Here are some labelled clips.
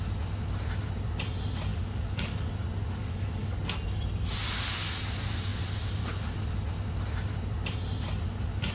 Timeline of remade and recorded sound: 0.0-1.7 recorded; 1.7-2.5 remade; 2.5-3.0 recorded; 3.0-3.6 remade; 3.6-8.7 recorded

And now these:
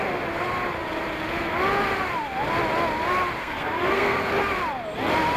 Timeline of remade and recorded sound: 0.0-3.4 recorded; 3.4-4.3 remade; 4.3-5.4 recorded

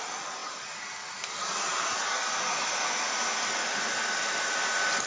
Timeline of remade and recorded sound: 0.0-5.1 recorded

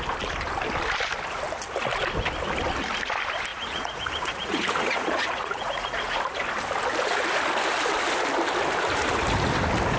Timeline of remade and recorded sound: 0.0-3.5 recorded; 3.5-6.2 remade; 6.2-10.0 recorded

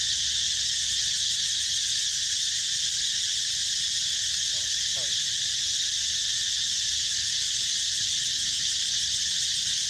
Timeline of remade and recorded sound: 0.0-9.9 recorded

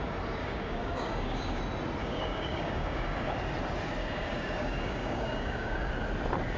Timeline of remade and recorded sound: 0.0-0.4 recorded; 0.4-1.6 remade; 1.6-2.0 recorded; 2.0-3.3 remade; 3.3-4.0 recorded; 4.0-5.9 remade; 5.9-6.6 recorded

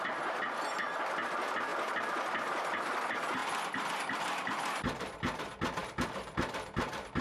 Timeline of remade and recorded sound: 0.0-7.2 remade

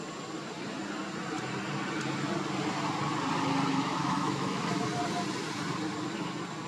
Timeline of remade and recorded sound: 0.0-3.7 recorded; 3.7-4.6 remade; 4.6-6.7 recorded